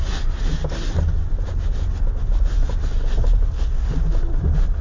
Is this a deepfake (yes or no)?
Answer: no